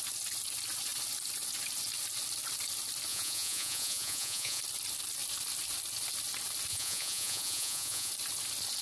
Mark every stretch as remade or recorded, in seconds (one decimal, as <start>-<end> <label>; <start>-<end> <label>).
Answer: 0.0-3.1 recorded; 3.1-4.6 remade; 4.6-6.7 recorded; 6.7-8.1 remade; 8.1-8.8 recorded